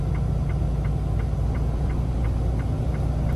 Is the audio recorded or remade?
recorded